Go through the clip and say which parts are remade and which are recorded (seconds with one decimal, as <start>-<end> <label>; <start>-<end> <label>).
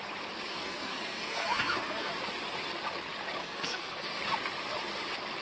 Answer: 0.0-0.5 recorded; 0.5-2.1 remade; 2.1-3.4 recorded; 3.4-4.2 remade; 4.2-5.4 recorded